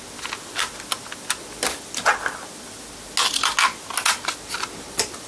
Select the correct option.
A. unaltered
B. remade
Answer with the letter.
A